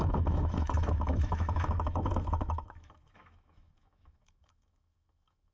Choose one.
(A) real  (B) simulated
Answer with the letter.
B